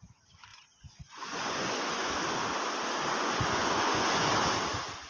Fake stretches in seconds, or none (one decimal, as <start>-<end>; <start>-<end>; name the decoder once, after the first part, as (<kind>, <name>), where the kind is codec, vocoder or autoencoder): 0.5-2.1 (vocoder, Vocos); 3.1-4.3